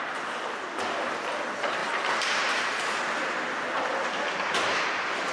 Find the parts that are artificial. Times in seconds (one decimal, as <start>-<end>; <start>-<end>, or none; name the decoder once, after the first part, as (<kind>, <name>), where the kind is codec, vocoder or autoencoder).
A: 1.8-2.4 (vocoder, BigVGAN v2)